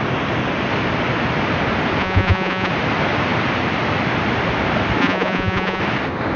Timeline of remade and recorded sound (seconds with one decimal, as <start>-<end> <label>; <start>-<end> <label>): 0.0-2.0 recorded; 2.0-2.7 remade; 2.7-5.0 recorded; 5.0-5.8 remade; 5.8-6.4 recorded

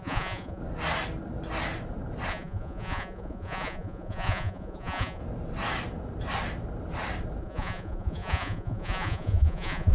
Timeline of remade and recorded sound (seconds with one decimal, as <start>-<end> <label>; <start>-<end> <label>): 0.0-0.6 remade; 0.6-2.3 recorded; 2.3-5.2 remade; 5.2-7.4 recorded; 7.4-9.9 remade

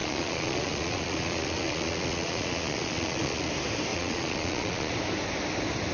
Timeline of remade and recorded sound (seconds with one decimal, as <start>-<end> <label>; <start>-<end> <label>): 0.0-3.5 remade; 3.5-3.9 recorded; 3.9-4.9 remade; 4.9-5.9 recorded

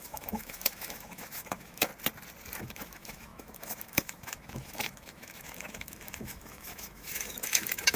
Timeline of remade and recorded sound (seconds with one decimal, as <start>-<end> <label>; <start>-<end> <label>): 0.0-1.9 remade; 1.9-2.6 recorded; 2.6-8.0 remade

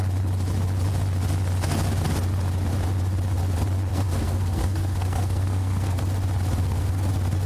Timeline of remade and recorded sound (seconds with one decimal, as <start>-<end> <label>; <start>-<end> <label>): 0.0-3.9 recorded; 3.9-6.0 remade; 6.0-6.6 recorded; 6.6-7.1 remade; 7.1-7.5 recorded

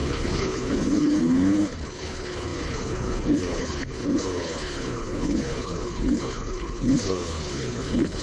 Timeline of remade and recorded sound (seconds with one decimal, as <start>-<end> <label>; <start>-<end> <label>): 0.0-8.2 remade

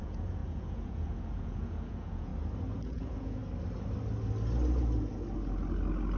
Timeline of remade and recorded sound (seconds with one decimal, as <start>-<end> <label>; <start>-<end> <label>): 0.0-2.3 remade; 2.3-2.9 recorded; 2.9-3.4 remade; 3.4-6.2 recorded